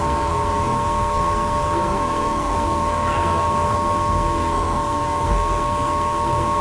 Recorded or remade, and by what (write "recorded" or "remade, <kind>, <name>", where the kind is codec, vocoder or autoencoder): remade, codec, SNAC